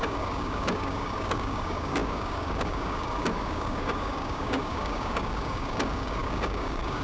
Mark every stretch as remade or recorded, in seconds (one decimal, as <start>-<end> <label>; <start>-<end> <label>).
0.0-7.0 remade